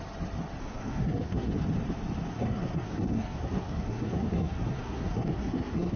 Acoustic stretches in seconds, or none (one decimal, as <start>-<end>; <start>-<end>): 0.0-0.6; 1.5-2.3